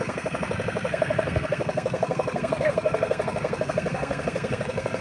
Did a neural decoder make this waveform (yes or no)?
yes